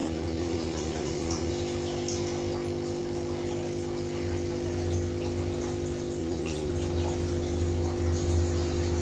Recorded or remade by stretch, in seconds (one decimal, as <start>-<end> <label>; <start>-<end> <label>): 0.0-1.5 remade; 1.5-6.2 recorded; 6.2-6.7 remade; 6.7-9.0 recorded